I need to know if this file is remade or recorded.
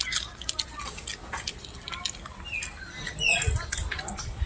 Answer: recorded